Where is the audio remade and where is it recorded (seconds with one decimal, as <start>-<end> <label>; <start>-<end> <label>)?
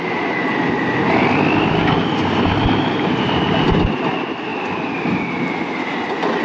0.0-1.8 recorded; 1.8-3.7 remade; 3.7-6.4 recorded